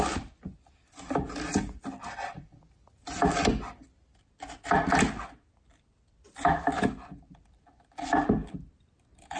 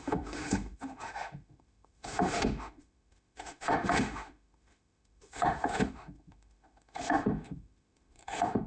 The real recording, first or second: first